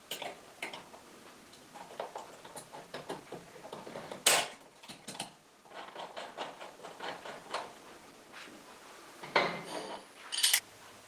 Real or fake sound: real